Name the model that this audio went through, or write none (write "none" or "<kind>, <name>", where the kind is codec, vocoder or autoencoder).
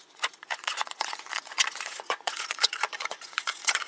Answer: vocoder, Vocos